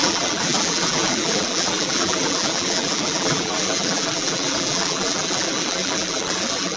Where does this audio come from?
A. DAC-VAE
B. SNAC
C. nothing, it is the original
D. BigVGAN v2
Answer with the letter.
D